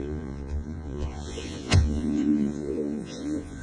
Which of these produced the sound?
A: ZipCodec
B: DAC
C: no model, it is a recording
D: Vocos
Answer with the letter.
D